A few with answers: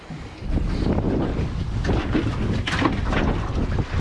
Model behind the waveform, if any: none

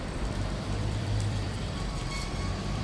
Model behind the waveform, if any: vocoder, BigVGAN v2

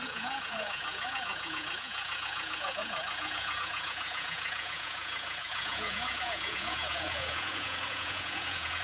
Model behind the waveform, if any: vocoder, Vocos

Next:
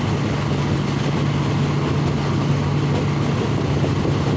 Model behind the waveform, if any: none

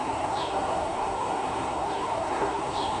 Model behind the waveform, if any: codec, SNAC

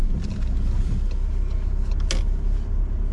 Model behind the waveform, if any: none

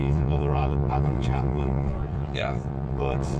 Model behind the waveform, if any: vocoder, WaveNeXt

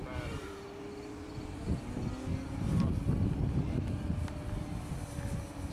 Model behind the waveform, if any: none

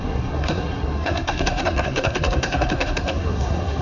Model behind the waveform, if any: codec, SNAC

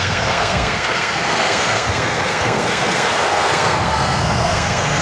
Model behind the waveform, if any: codec, SNAC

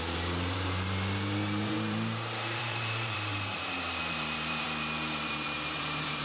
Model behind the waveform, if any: vocoder, BigVGAN v2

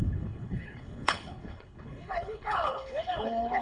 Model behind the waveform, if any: codec, HILCodec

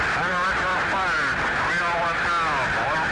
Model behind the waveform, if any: none